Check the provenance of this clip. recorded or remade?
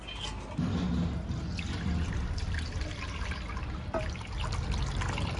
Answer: recorded